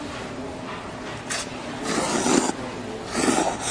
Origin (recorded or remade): recorded